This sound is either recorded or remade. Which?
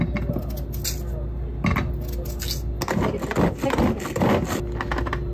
recorded